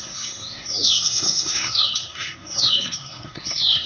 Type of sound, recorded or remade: remade